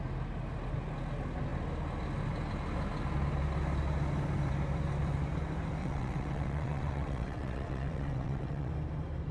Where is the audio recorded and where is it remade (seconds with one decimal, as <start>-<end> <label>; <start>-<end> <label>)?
0.0-5.8 recorded; 5.8-8.7 remade; 8.7-9.3 recorded